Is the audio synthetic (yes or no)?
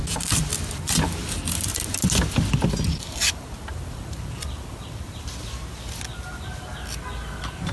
no